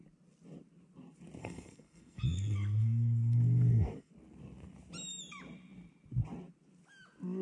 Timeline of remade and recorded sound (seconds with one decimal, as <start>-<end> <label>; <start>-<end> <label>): 0.0-1.4 recorded; 1.4-4.1 remade; 4.1-7.4 recorded